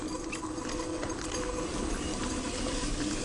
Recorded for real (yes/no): yes